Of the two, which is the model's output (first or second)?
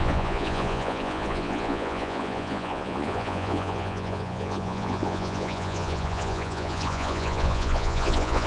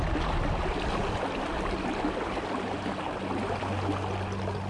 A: first